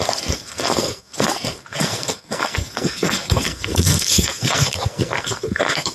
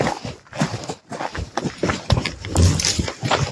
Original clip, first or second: second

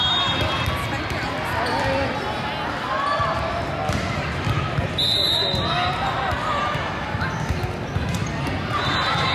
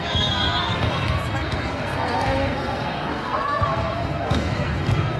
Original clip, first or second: first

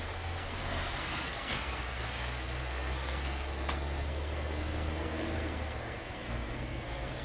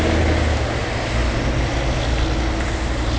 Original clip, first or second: second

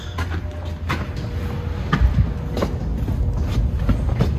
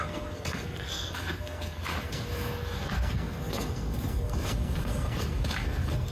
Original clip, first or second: first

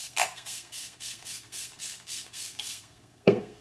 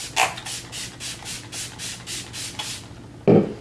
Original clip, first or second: second